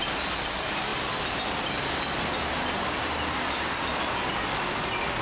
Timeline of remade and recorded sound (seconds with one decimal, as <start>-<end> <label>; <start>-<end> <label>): 0.0-5.2 recorded